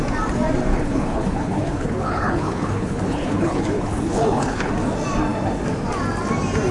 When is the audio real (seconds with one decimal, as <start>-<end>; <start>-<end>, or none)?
0.0-0.7; 4.7-6.7